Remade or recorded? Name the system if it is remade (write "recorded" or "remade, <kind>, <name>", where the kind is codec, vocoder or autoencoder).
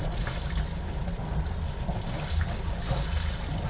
recorded